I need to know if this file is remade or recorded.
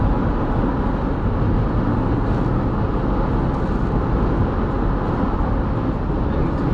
recorded